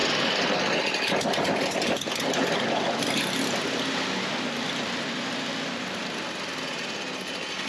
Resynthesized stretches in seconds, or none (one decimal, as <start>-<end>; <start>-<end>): none